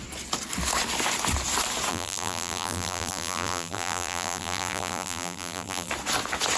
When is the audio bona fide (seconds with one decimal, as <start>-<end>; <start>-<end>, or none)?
0.0-1.9; 5.9-6.6